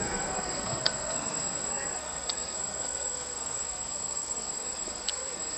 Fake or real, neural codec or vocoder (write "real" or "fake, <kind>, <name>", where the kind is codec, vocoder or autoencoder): fake, codec, SNAC